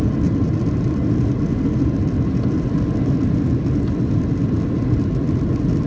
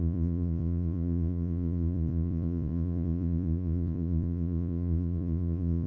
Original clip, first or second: first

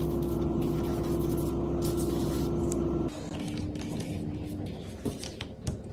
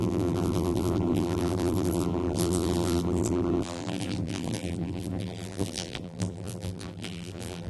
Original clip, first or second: first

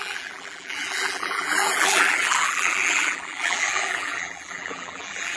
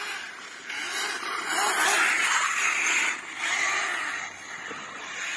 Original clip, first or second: second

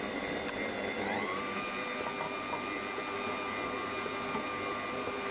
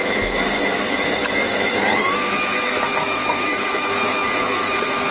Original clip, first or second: first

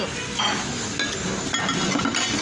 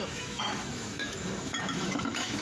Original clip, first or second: first